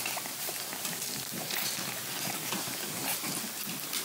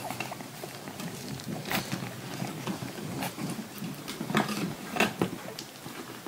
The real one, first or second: first